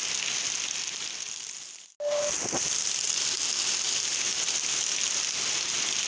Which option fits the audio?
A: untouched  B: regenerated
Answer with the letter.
A